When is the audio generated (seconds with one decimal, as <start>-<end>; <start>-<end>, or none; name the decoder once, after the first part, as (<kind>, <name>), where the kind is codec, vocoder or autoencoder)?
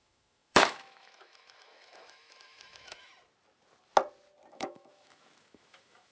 0.0-3.1 (autoencoder, DAC-VAE); 4.5-6.1